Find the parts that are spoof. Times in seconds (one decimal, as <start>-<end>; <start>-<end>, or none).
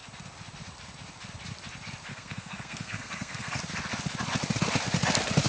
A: 2.1-3.6